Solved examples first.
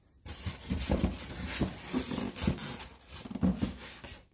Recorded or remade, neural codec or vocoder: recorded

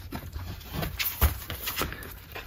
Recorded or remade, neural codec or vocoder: remade, vocoder, BigVGAN v2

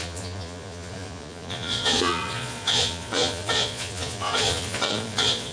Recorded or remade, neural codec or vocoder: remade, vocoder, Vocos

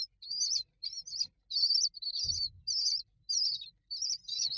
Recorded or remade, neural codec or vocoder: recorded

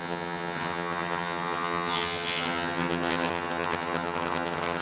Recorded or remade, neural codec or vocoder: remade, vocoder, HiFi-GAN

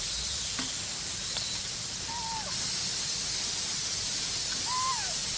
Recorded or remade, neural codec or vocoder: recorded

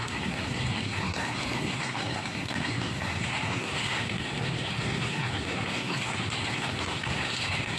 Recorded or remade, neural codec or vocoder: remade, codec, SNAC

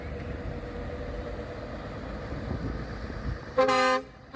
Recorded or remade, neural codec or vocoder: recorded